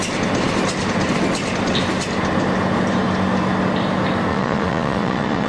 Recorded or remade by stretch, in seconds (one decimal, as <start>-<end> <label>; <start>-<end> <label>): 0.0-4.3 recorded; 4.3-5.5 remade